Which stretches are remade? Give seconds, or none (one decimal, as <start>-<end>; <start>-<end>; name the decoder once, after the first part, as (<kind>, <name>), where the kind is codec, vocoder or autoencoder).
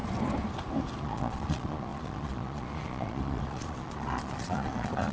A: 1.0-5.1 (vocoder, Vocos)